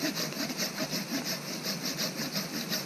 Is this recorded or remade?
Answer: recorded